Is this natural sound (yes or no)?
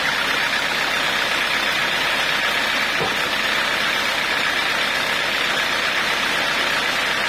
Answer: yes